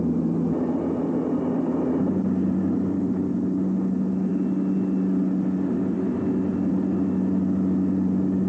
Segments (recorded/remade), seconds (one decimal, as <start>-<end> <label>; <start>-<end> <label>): 0.0-8.5 recorded